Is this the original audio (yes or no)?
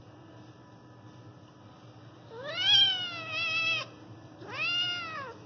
yes